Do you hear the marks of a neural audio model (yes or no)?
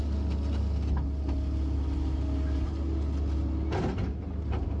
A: no